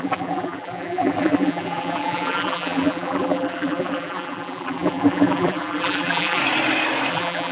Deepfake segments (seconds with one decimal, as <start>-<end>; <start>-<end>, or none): 0.0-6.4; 7.1-7.5